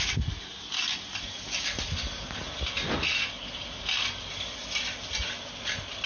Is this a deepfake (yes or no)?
no